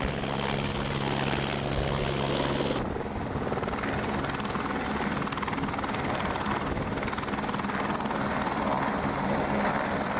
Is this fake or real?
real